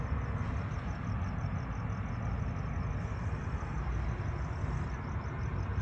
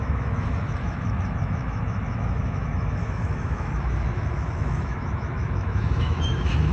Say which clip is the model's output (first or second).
second